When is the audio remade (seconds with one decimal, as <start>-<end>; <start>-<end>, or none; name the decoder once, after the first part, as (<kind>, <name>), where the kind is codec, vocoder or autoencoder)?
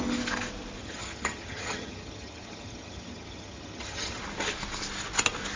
0.8-4.2 (vocoder, HiFi-GAN)